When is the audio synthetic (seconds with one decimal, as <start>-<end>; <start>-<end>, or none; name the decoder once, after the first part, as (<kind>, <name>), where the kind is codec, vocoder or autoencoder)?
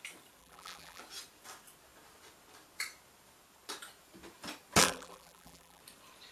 0.4-1.0 (vocoder, BigVGAN v2); 4.8-5.8